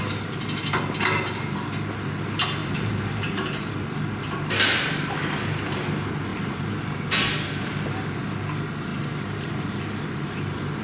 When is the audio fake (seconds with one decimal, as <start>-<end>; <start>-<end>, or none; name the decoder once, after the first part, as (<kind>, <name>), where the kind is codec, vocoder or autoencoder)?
2.6-3.7 (vocoder, BigVGAN v2); 6.3-6.8; 8.9-10.8